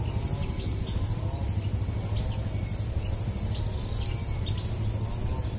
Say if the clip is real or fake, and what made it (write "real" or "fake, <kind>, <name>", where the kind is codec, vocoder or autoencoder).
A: real